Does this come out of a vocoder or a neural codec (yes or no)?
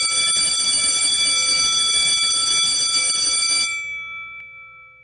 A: no